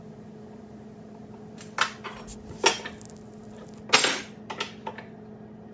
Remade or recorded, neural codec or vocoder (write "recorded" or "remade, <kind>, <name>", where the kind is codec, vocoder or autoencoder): recorded